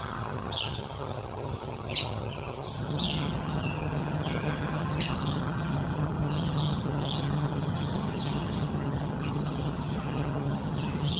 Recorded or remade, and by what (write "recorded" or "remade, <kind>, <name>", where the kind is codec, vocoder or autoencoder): remade, vocoder, HiFi-GAN